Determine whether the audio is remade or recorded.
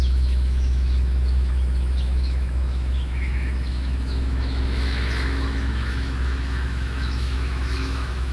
remade